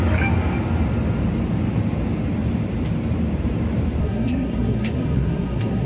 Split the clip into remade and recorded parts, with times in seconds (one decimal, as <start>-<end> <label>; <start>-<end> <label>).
0.0-4.0 recorded; 4.0-5.9 remade